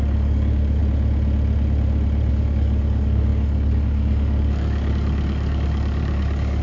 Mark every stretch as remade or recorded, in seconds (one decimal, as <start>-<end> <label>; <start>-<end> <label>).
0.0-0.8 remade; 0.8-2.3 recorded; 2.3-6.6 remade